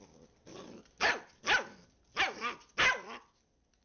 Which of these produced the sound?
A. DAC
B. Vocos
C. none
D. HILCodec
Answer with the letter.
C